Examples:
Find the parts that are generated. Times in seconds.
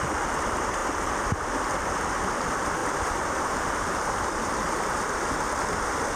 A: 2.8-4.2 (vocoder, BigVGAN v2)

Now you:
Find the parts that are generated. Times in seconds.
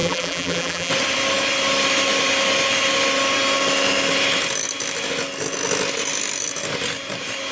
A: 0.0-0.9 (vocoder, BigVGAN v2)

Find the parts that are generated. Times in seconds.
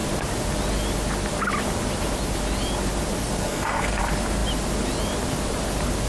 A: 3.2-4.0 (codec, SNAC)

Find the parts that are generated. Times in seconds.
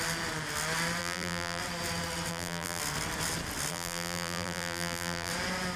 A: 1.0-1.6 (vocoder, BigVGAN v2); 2.3-2.8; 3.7-5.3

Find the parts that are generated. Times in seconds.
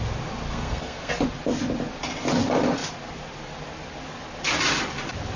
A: 0.5-1.1 (codec, SNAC)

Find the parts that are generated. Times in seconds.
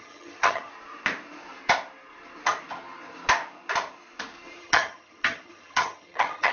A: 0.0-0.7 (vocoder, HiFi-GAN); 4.6-6.5